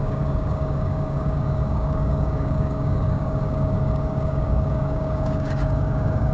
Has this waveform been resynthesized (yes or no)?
yes